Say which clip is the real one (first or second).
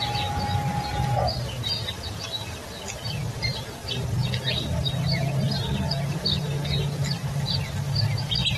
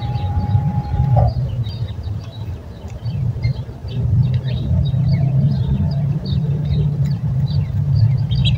first